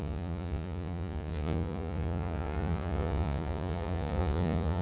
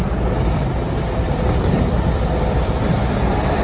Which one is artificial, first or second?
first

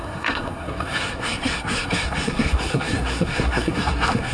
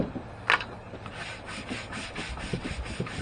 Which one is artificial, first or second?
first